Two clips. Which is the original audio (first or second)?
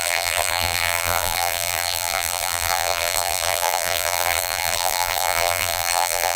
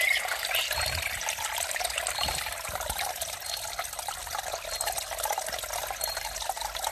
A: second